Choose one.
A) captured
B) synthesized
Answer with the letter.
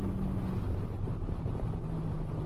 A